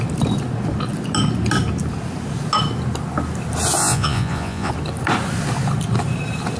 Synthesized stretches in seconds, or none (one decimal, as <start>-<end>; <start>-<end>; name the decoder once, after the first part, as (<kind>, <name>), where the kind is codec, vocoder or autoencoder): 3.8-4.7 (vocoder, Vocos)